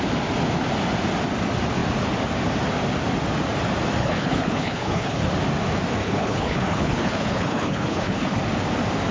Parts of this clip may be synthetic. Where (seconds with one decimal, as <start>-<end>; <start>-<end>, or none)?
4.0-5.3; 6.0-8.4